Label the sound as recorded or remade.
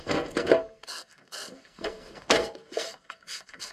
remade